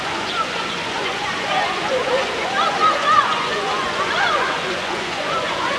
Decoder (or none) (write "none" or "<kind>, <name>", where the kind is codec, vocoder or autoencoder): vocoder, Vocos